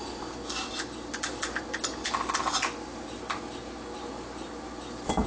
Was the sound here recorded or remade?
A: recorded